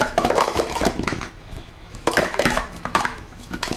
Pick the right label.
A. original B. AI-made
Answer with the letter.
B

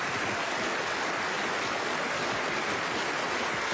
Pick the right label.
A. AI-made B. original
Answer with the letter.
B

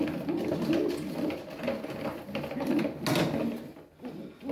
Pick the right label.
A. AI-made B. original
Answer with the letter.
B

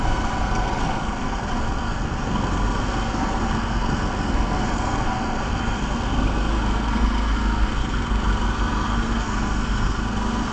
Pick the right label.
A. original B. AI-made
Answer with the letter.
B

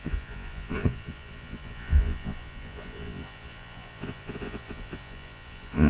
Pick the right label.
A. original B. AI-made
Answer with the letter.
B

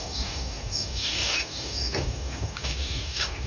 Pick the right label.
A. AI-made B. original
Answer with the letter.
A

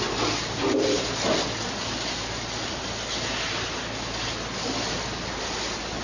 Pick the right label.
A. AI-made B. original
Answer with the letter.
B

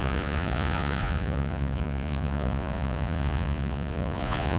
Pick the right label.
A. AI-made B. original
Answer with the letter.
A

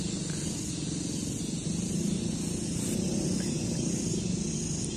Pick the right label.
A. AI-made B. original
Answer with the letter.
B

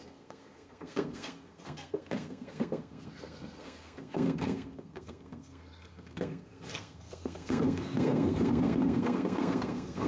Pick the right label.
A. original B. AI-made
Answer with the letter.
B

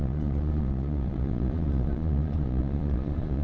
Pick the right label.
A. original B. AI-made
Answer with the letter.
B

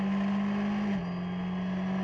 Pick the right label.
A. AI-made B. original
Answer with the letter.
B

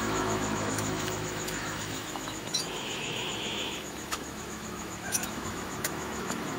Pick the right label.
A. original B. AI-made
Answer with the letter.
B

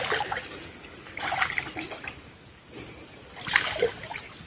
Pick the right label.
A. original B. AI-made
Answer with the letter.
A